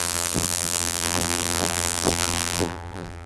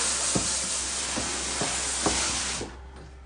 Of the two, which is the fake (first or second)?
first